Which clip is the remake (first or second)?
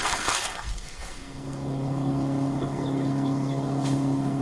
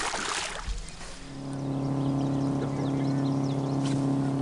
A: first